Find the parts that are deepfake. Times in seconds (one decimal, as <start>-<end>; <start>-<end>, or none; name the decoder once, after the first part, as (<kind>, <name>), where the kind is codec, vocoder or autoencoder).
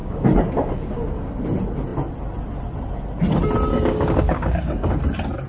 0.0-1.4 (codec, DAC); 3.7-5.0